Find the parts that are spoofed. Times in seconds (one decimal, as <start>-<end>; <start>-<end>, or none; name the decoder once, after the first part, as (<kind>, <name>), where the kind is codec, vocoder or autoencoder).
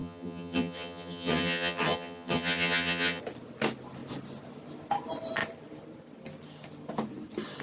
0.0-3.2 (vocoder, HiFi-GAN)